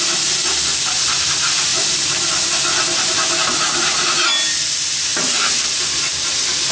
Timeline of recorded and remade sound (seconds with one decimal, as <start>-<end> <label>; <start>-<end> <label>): 0.0-1.7 recorded; 1.7-2.4 remade; 2.4-5.1 recorded; 5.1-5.6 remade; 5.6-6.7 recorded